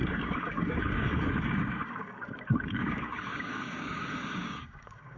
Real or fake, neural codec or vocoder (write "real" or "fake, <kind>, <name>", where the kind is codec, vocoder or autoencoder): fake, codec, DAC